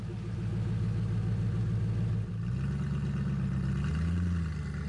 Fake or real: real